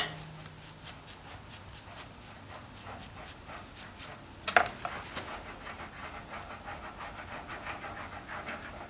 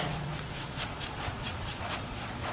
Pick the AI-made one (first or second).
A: second